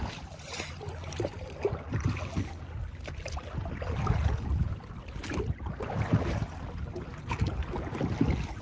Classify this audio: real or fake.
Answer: real